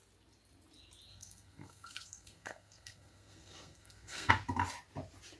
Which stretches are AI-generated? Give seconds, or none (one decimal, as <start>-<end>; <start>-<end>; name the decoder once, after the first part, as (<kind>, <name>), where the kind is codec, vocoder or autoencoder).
1.1-4.3 (codec, SNAC)